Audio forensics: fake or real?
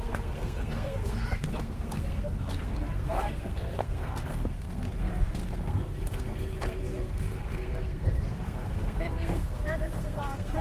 fake